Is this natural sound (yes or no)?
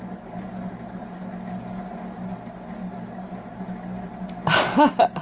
yes